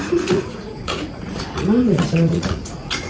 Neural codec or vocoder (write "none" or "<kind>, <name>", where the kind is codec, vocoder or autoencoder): vocoder, Vocos